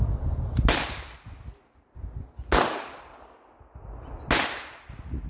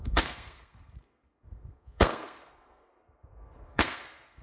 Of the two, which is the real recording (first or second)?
first